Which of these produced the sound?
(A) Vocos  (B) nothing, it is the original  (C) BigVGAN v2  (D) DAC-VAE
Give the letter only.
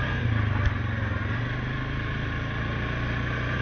B